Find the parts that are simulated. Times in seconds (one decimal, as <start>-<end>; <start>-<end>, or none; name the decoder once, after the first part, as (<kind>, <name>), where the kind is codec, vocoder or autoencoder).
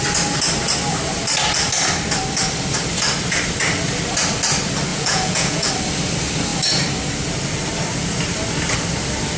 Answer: 4.9-5.7 (vocoder, Vocos)